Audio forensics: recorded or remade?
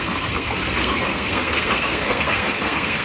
remade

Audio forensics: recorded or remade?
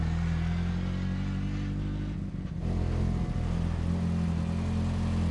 recorded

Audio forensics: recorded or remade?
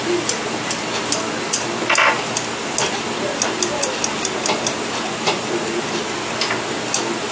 recorded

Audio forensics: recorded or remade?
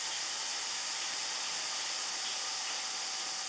recorded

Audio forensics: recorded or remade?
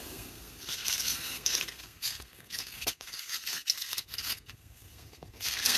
remade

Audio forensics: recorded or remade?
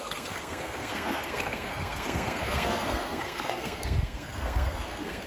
remade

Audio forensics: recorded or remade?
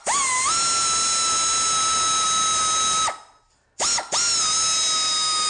recorded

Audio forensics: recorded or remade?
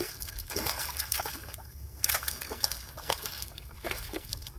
remade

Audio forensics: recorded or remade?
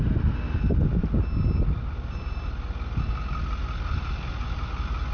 recorded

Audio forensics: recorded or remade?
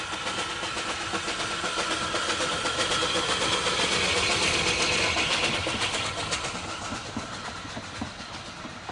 recorded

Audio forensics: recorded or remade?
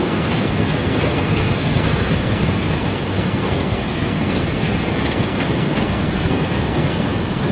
remade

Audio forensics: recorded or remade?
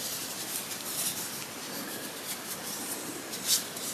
recorded